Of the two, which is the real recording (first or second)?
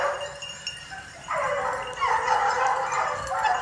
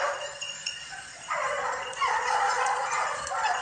first